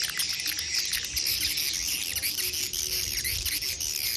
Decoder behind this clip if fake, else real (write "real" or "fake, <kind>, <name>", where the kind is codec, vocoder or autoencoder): real